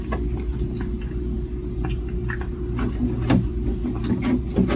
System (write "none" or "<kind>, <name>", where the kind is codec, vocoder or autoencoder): none